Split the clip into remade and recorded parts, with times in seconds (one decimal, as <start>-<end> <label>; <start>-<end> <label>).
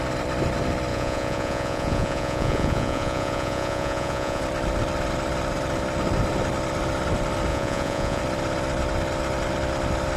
0.0-0.9 recorded; 0.9-4.4 remade; 4.4-7.5 recorded; 7.5-8.2 remade; 8.2-10.2 recorded